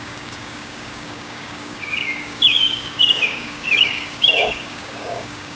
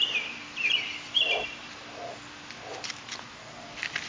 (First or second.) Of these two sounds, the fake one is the first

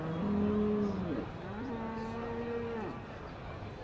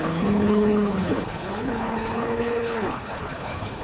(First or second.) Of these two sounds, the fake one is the second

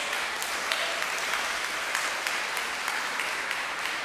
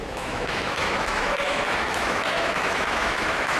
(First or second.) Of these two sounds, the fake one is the second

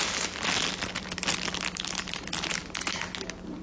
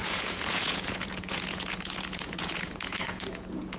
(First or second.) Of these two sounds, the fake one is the second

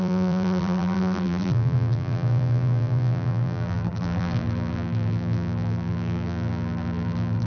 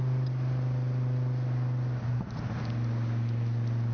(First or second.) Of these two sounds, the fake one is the first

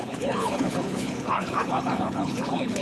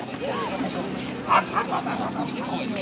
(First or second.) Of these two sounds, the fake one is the first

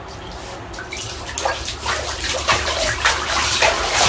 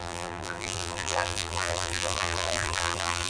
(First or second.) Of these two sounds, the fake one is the second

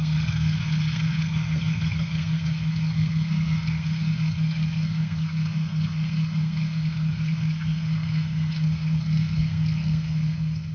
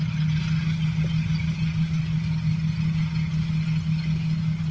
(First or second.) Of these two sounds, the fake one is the first